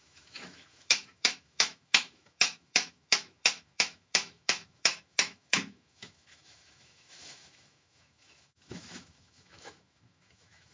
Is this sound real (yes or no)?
no